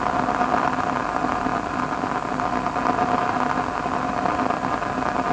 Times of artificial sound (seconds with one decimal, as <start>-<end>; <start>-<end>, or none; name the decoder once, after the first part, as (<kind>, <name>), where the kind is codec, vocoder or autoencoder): none